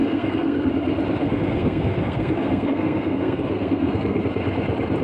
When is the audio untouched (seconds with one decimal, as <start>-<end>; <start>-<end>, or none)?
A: 0.7-1.2; 4.2-5.0

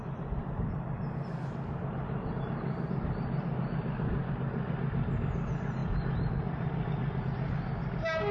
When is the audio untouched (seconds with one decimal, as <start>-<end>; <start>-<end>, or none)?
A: 0.0-5.8; 7.2-8.3

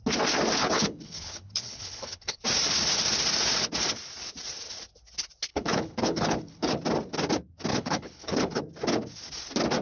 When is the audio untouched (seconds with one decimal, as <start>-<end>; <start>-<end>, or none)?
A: 0.0-0.6; 2.4-5.5; 6.8-7.7; 8.6-9.8

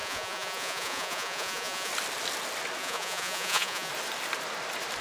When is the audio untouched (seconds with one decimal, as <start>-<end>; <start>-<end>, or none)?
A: 1.9-2.8; 3.9-5.0

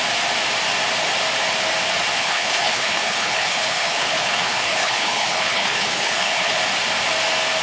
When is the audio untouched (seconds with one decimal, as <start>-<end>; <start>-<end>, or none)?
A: 0.0-2.2; 6.6-7.6

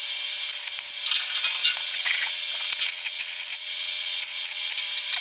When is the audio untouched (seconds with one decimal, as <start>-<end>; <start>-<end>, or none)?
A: 0.0-1.6; 4.7-5.2

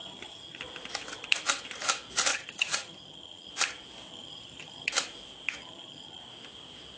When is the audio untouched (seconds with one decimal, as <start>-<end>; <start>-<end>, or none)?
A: 0.6-2.3; 3.5-4.1; 4.9-5.6; 6.2-7.0

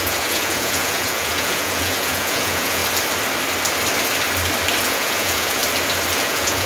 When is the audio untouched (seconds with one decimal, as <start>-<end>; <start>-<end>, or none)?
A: 2.8-4.8; 5.6-6.2